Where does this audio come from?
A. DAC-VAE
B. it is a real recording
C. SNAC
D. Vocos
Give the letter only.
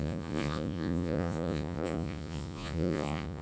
D